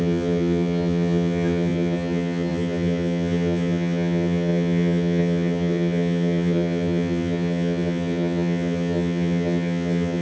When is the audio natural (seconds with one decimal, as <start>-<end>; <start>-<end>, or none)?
none